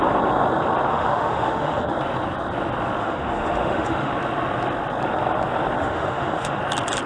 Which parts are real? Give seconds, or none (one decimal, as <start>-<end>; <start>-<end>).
0.0-0.9; 1.9-3.0; 4.1-5.8; 6.6-7.1